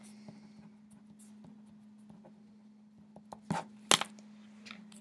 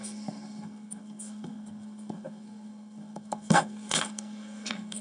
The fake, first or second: second